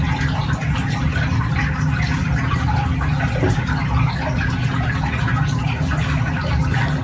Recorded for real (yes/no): yes